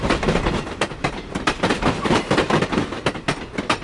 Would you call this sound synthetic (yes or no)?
yes